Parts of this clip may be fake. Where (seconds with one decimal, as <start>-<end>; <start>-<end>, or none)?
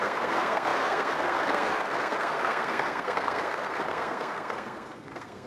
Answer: 0.0-5.5